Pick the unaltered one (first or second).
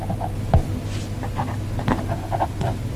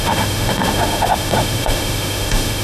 first